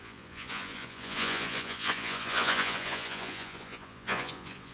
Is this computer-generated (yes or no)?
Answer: yes